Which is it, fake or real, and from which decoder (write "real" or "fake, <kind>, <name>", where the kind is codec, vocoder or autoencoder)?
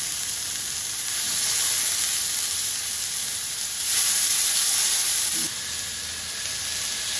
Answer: real